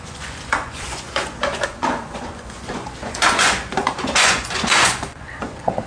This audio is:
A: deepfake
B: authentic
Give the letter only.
A